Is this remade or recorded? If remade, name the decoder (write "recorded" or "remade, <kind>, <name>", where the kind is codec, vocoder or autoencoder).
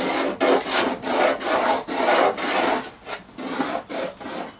recorded